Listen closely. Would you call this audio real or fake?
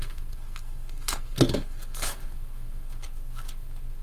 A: fake